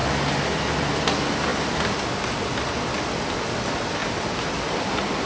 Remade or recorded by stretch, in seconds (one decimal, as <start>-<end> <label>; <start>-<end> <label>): 0.0-5.3 recorded